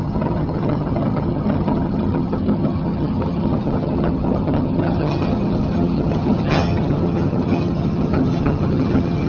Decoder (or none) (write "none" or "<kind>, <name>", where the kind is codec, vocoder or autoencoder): vocoder, HiFi-GAN